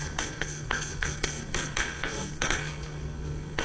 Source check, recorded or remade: remade